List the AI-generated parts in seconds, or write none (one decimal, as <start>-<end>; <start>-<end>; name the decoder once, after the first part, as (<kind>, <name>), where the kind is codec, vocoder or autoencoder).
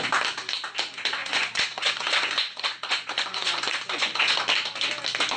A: 1.2-4.4 (vocoder, Vocos)